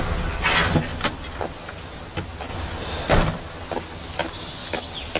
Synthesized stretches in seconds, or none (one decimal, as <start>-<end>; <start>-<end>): 4.6-5.2